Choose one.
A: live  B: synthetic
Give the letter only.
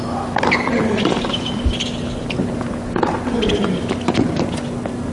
A